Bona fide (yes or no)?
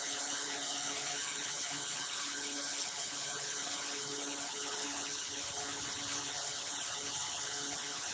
no